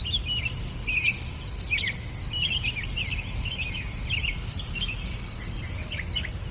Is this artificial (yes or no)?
no